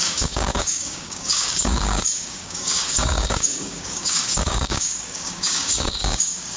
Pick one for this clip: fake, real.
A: fake